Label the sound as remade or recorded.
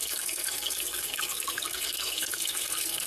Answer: remade